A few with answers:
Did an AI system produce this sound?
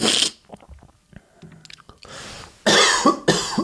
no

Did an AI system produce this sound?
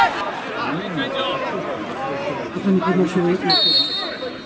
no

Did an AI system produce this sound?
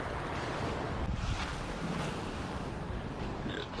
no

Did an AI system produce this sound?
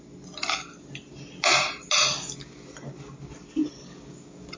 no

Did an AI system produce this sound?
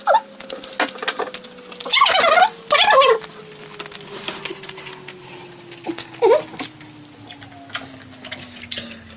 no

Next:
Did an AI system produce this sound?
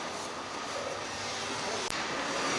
no